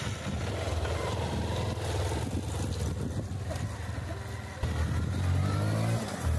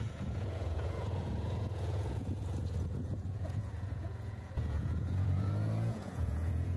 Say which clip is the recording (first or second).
first